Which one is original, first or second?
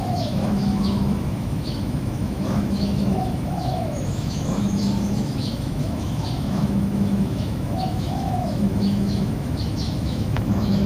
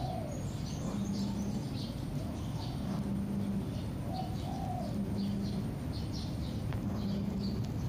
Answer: second